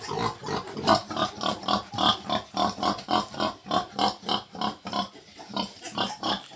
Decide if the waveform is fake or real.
real